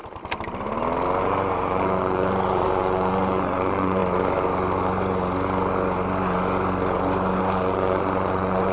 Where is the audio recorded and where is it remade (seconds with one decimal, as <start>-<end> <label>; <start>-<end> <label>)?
0.0-1.2 recorded; 1.2-4.0 remade; 4.0-7.4 recorded; 7.4-8.7 remade